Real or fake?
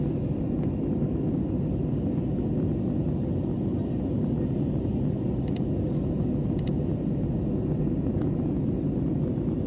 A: real